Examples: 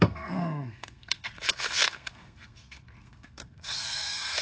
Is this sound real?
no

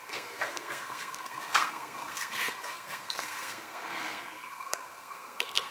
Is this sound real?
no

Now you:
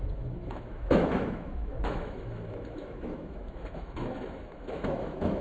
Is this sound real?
no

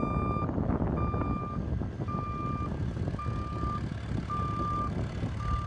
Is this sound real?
yes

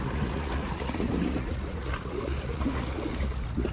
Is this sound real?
no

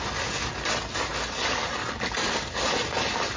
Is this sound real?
yes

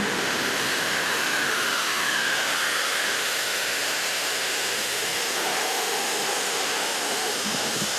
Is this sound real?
no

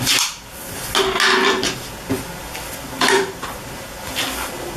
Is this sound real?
yes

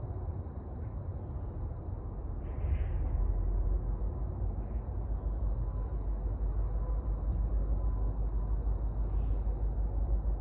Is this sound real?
yes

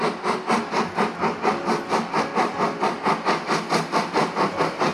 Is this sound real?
yes